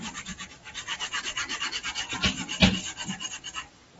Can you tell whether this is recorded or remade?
remade